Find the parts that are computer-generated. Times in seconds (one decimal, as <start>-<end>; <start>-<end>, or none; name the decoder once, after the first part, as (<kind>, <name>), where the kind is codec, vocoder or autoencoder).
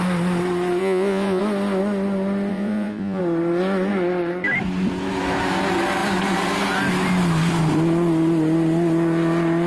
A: 0.8-1.4 (vocoder, Vocos); 2.5-3.2